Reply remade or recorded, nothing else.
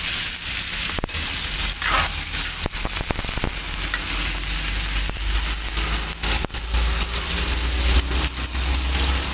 recorded